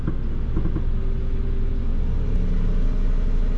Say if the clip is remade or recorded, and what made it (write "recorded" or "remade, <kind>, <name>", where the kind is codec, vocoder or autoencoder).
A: recorded